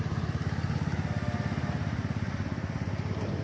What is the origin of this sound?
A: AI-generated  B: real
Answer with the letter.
B